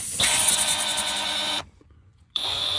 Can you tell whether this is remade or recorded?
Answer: remade